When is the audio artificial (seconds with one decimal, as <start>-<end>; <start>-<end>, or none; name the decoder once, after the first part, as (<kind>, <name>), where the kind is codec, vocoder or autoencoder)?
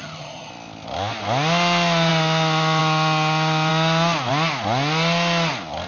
0.0-0.5 (vocoder, HiFi-GAN)